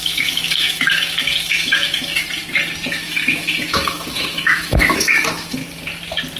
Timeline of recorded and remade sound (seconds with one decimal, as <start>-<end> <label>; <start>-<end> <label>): 0.0-2.2 remade; 2.2-2.9 recorded; 2.9-5.6 remade; 5.6-6.4 recorded